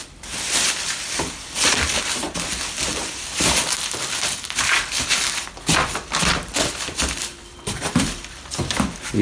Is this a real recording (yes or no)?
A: no